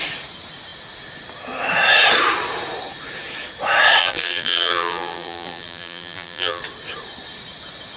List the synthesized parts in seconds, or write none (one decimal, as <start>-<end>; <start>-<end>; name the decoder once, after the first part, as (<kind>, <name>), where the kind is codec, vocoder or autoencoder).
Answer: 4.0-6.6 (vocoder, BigVGAN v2)